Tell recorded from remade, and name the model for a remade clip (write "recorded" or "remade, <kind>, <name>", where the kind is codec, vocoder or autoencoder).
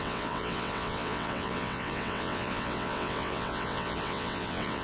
remade, vocoder, WaveNeXt